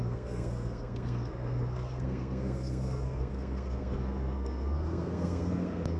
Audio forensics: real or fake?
fake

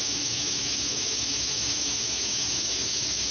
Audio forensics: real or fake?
fake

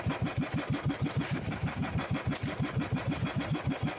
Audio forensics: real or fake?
fake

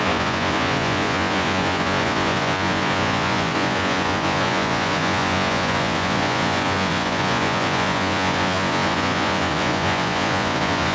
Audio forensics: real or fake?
fake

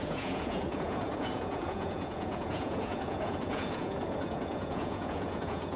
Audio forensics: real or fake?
fake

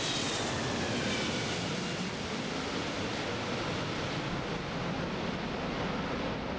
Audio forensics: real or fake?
real